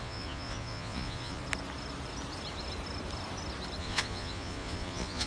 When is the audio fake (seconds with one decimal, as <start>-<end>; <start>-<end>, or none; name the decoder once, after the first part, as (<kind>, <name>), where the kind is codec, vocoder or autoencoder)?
0.0-1.4 (vocoder, Vocos); 3.8-5.3